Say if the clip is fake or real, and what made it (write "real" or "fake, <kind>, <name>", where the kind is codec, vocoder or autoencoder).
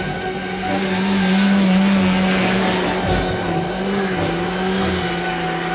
real